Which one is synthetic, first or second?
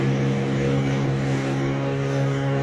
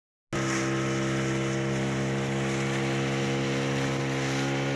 first